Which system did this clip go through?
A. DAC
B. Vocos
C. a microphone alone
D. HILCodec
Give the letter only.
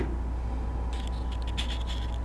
C